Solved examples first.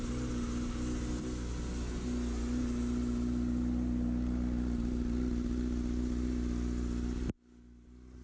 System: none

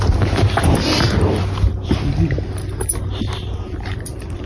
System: vocoder, BigVGAN v2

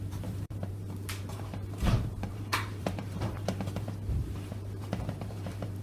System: vocoder, BigVGAN v2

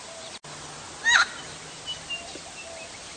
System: none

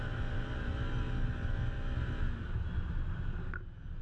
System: none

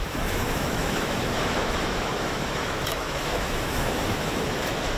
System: autoencoder, DAC-VAE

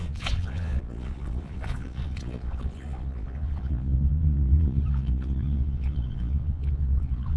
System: vocoder, Vocos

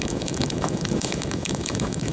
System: autoencoder, DAC-VAE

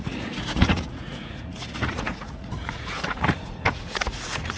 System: vocoder, Vocos